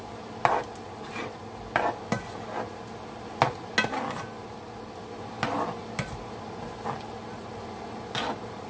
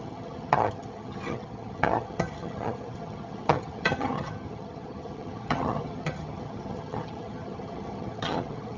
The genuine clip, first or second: first